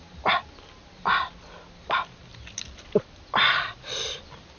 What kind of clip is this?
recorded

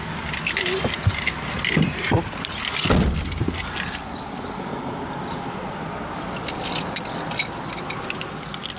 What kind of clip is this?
recorded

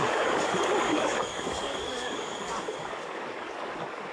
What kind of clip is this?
remade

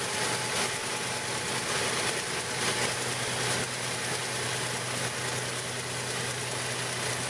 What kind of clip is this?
recorded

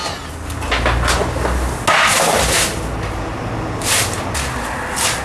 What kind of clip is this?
recorded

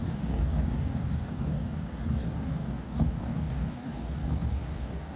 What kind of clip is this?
remade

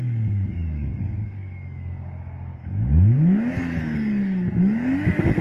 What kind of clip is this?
remade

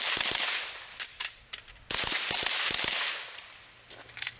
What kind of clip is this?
recorded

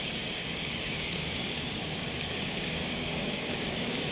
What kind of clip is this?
remade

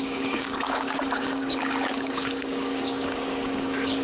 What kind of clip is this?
remade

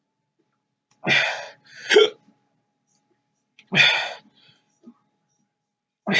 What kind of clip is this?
recorded